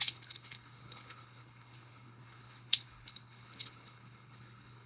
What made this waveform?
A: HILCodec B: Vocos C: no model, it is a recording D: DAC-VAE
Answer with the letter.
A